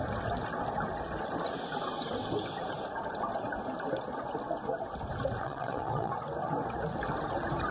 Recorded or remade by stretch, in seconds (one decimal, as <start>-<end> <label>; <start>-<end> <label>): 0.0-5.4 recorded; 5.4-6.1 remade; 6.1-7.7 recorded